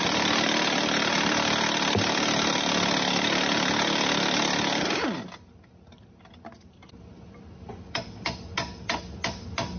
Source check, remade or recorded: recorded